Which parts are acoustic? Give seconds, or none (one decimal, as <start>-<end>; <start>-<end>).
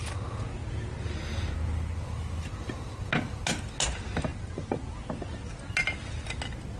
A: 0.0-6.8